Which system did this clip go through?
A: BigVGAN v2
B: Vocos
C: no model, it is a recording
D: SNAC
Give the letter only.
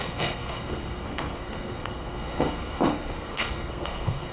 D